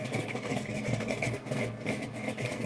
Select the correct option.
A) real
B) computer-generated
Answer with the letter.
B